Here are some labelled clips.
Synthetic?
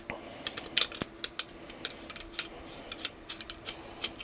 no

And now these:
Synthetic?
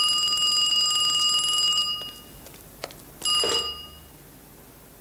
no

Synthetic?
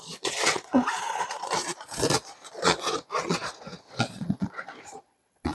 yes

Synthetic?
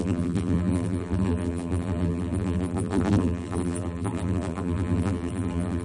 yes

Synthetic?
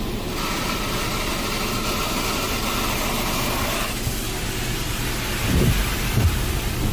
no